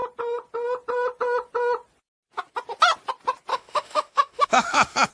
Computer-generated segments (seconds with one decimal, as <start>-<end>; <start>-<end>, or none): 3.5-5.1